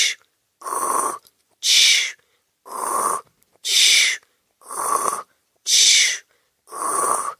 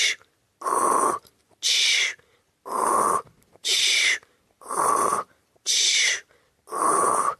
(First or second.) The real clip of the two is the second